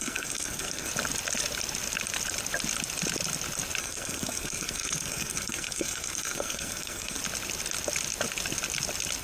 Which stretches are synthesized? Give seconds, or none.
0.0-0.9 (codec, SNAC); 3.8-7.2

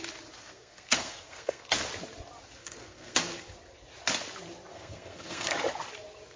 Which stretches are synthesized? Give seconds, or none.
0.4-1.6 (codec, SNAC); 2.6-3.2; 4.7-5.5

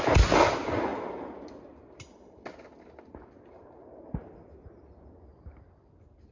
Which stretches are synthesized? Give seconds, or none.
none

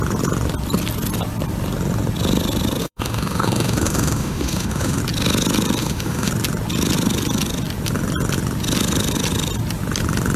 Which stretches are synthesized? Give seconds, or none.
2.8-5.0 (autoencoder, DAC-VAE); 5.8-6.3